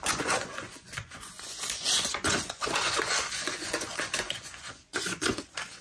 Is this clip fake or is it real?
fake